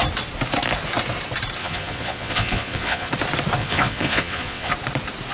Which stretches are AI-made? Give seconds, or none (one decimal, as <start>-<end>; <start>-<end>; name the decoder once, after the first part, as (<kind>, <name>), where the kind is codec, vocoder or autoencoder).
1.6-3.1 (vocoder, Vocos); 3.6-4.7